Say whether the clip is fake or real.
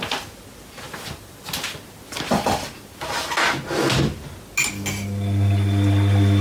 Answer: real